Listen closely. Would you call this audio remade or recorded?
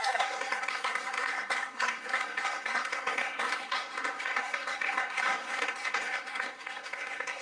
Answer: remade